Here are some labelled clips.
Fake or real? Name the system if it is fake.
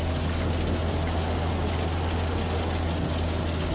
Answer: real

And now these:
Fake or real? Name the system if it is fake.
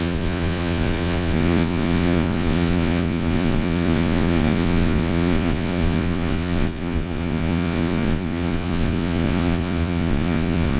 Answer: fake, vocoder, Vocos